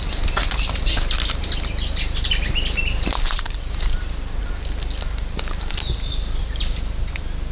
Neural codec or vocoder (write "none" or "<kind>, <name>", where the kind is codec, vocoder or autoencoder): none